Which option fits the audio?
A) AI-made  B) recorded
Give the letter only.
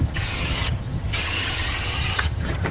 A